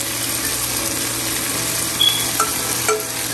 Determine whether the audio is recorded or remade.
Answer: recorded